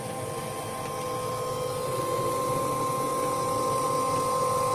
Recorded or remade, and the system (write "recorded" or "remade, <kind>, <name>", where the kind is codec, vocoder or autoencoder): recorded